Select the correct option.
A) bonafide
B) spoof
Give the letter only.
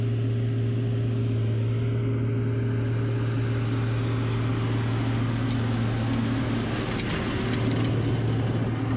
A